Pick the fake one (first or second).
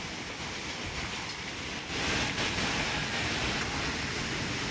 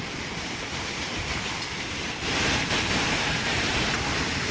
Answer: second